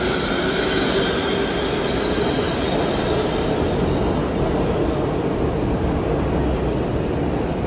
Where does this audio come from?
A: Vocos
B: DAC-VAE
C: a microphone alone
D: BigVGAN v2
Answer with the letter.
C